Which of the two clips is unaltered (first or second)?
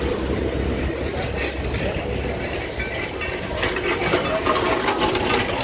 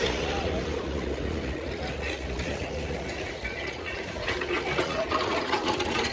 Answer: first